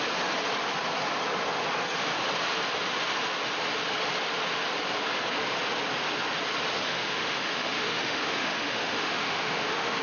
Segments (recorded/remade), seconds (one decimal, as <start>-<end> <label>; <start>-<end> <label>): 0.0-6.8 recorded; 6.8-10.0 remade

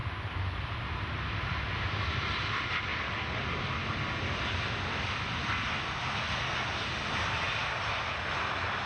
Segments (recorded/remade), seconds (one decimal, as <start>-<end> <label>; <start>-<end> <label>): 0.0-2.9 remade; 2.9-6.7 recorded; 6.7-7.6 remade; 7.6-8.9 recorded

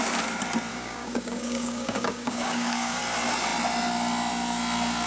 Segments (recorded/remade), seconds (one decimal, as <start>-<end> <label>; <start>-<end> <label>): 0.0-0.7 recorded; 0.7-3.0 remade; 3.0-5.1 recorded

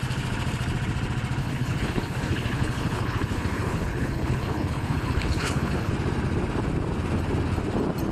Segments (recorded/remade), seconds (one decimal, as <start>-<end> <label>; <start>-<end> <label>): 0.0-1.4 recorded; 1.4-5.9 remade; 5.9-8.1 recorded

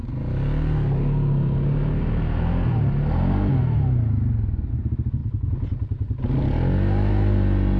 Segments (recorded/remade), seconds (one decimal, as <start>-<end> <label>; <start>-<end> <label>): 0.0-7.8 recorded

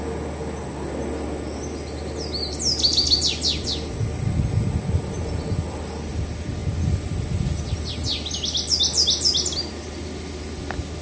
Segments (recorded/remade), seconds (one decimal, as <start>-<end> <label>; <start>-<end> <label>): 0.0-11.0 recorded

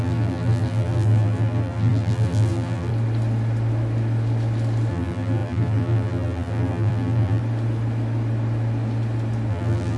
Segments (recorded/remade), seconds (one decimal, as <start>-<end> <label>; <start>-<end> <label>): 0.0-2.9 remade; 2.9-4.9 recorded; 4.9-7.4 remade; 7.4-9.5 recorded; 9.5-10.0 remade